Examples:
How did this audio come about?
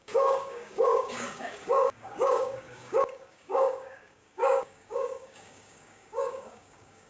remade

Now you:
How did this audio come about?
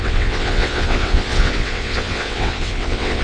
remade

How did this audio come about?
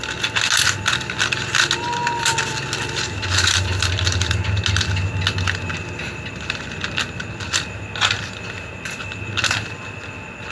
recorded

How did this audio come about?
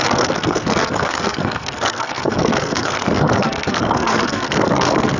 remade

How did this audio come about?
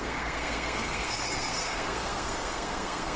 remade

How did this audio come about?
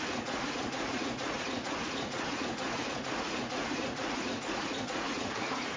remade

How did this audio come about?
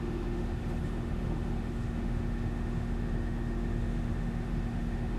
remade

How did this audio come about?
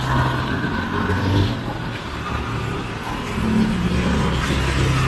recorded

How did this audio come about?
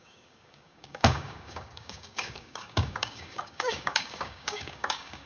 remade